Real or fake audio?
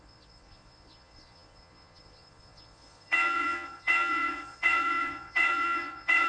fake